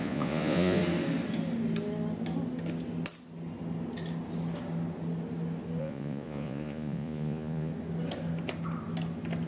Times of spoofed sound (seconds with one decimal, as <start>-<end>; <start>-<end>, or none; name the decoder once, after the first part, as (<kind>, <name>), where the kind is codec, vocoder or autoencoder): 0.0-0.8 (vocoder, Vocos); 5.8-7.7